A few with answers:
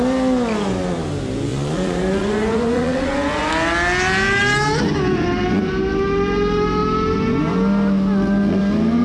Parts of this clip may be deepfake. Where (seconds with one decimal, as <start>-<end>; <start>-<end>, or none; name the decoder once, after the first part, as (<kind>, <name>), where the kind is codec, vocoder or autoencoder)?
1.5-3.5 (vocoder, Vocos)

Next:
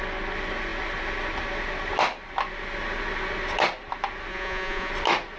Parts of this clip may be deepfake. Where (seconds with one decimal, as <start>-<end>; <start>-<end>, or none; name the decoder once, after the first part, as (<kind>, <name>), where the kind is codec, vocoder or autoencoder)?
4.3-4.9 (vocoder, Vocos)

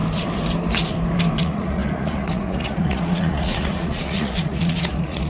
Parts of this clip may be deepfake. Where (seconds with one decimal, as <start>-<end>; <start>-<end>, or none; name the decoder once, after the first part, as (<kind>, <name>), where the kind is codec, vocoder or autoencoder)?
1.4-5.3 (vocoder, Vocos)

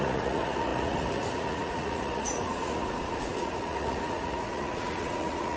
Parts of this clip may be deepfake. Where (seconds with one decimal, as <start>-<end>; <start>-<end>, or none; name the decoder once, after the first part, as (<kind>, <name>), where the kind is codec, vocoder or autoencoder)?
0.0-5.6 (vocoder, Vocos)